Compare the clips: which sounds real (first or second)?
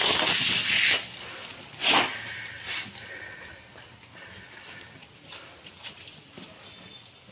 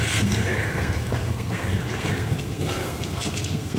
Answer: first